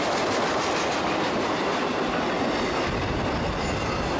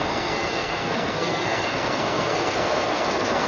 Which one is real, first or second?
first